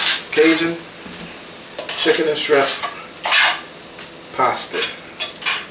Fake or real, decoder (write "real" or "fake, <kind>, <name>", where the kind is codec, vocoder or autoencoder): real